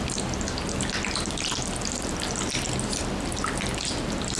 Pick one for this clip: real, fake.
real